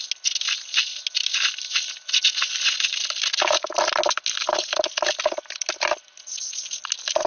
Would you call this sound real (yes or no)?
yes